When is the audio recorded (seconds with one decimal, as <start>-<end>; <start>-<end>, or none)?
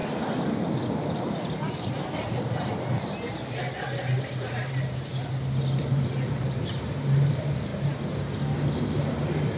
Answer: 0.0-1.0; 5.1-5.8; 7.7-8.8